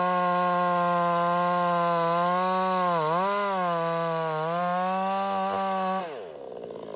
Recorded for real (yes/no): yes